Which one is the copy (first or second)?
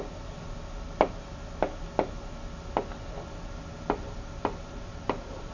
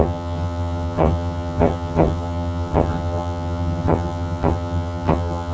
second